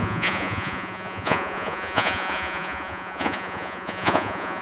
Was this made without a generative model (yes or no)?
no